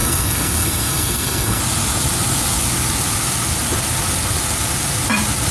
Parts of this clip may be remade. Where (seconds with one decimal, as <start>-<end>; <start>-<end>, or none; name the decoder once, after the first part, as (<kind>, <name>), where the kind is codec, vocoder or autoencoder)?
0.0-1.6 (codec, SNAC)